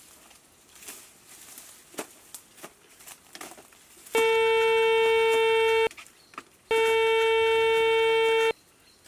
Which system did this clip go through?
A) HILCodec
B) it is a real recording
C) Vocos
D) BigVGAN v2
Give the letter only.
B